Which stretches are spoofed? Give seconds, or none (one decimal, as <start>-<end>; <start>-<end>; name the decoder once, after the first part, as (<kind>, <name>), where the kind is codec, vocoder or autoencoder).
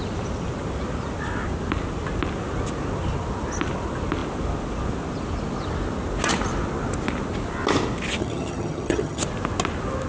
8.2-9.2 (vocoder, HiFi-GAN)